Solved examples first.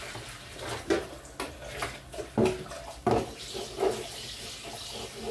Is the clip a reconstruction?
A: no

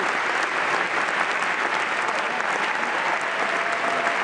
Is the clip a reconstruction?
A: no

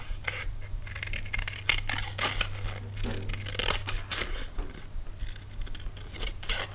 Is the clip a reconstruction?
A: no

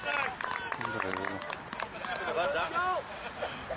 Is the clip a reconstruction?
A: no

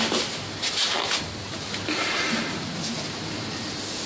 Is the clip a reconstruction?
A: no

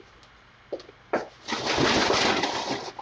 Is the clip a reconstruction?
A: no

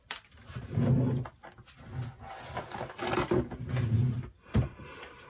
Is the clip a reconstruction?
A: no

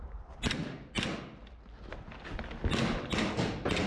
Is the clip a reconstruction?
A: no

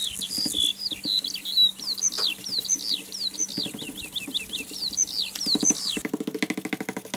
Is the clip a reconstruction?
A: no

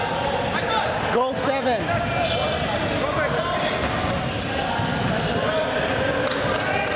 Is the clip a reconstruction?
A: no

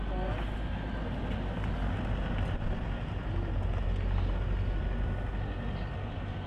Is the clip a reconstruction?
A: no